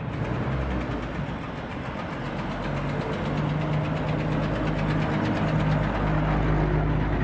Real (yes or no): yes